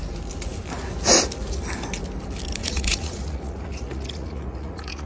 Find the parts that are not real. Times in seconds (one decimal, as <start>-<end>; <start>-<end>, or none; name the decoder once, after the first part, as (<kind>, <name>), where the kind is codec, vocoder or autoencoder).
2.6-5.1 (vocoder, Vocos)